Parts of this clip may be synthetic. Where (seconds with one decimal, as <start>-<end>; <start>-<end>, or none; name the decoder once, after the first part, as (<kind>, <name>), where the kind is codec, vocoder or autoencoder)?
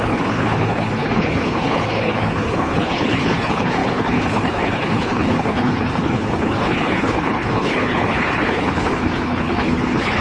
0.0-10.2 (codec, HILCodec)